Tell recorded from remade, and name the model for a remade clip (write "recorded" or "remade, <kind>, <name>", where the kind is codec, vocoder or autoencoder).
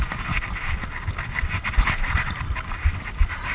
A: recorded